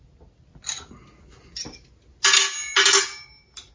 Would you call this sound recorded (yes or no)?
yes